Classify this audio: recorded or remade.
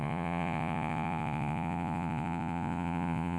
remade